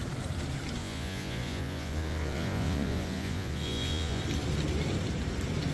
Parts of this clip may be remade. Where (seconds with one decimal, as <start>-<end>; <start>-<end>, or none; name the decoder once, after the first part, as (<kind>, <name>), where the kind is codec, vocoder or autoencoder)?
0.8-4.2 (vocoder, Vocos)